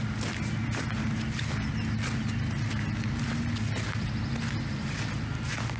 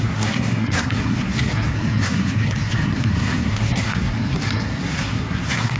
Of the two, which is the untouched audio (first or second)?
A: first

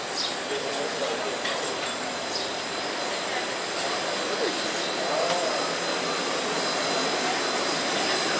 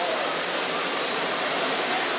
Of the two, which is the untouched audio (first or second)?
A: first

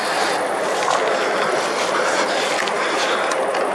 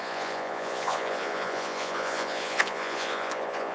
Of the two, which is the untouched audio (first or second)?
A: first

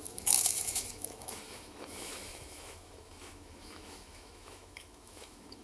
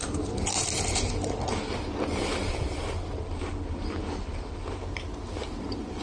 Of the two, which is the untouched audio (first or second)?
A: second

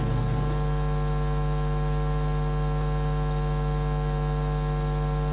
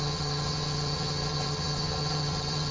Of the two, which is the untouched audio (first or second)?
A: first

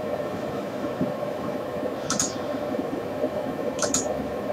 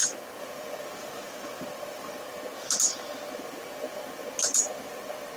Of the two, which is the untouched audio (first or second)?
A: second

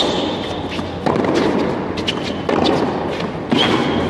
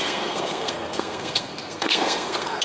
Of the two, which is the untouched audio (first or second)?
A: first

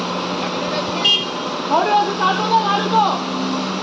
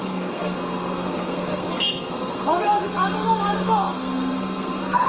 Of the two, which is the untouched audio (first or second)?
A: first